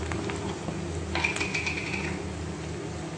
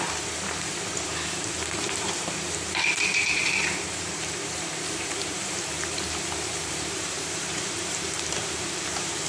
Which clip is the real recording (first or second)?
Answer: first